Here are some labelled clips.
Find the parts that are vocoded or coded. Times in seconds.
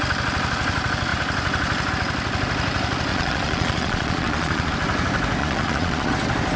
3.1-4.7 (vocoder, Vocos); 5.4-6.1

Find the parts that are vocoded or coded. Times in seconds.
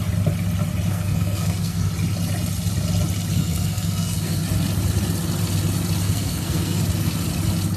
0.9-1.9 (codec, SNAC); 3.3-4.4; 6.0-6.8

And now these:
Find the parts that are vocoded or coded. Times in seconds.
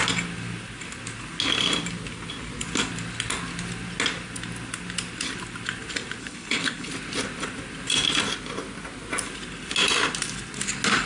6.2-6.9 (codec, HILCodec)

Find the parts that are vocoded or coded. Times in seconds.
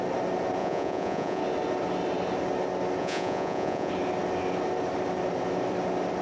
0.6-1.4 (vocoder, Vocos); 3.0-3.9